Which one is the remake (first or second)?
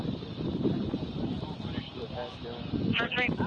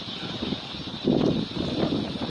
first